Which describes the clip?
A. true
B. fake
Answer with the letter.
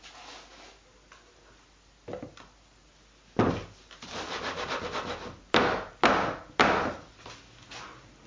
A